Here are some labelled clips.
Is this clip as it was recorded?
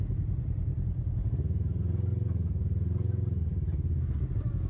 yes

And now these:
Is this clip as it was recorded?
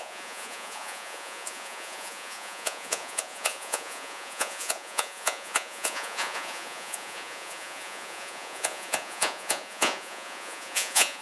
no